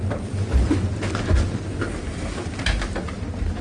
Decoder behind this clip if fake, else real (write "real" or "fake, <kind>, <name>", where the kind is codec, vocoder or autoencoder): real